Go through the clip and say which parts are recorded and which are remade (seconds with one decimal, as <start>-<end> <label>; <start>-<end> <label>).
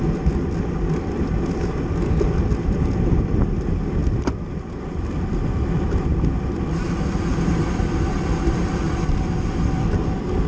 0.0-10.5 recorded